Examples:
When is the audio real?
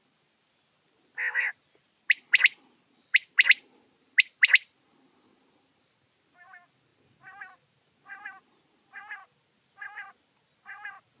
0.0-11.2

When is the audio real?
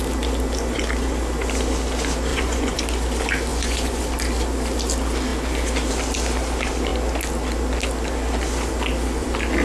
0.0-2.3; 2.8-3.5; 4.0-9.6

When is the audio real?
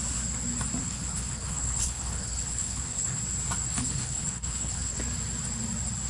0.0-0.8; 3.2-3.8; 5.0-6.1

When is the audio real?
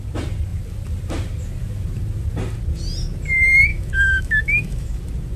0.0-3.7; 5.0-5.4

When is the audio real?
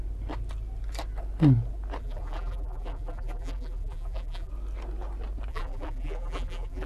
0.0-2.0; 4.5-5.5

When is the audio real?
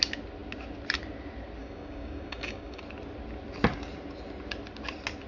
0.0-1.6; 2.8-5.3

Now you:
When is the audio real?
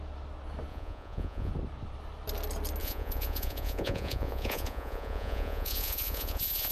0.0-0.7; 1.5-2.8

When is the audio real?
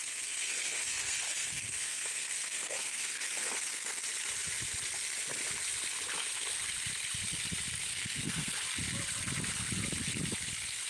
4.0-7.9; 8.5-10.9